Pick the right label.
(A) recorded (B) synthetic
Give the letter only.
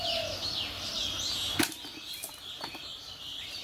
A